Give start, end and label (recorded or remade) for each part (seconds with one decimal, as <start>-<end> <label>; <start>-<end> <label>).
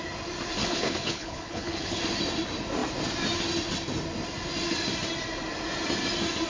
0.0-0.6 recorded; 0.6-2.0 remade; 2.0-6.5 recorded